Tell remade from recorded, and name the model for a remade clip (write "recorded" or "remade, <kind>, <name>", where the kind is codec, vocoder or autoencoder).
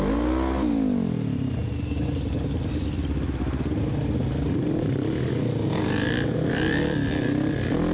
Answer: recorded